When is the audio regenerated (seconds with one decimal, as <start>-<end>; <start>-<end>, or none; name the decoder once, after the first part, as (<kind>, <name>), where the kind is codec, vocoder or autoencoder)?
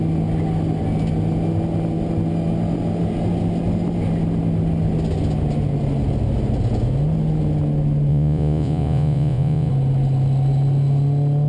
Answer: 8.1-9.7 (vocoder, Vocos)